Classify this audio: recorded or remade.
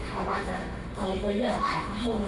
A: remade